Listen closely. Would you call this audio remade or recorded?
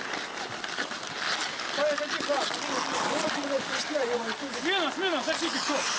recorded